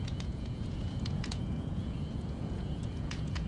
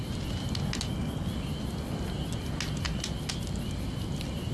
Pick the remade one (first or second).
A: first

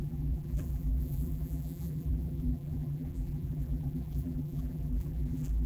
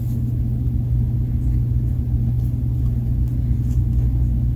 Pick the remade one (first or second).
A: first